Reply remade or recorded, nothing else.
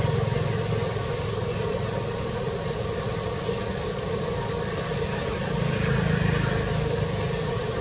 recorded